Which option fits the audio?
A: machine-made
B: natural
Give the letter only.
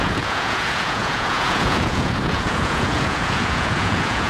A